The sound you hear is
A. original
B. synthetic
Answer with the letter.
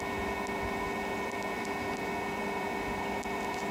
A